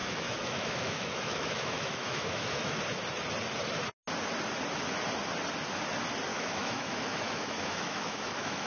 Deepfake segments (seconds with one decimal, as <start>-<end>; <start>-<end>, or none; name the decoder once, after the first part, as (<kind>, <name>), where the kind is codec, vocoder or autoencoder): 0.0-2.8 (autoencoder, DAC-VAE); 6.3-8.7